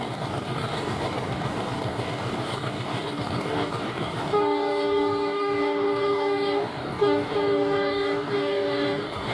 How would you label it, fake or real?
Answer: fake